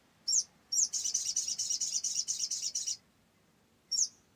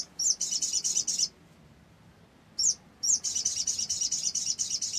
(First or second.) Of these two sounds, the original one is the second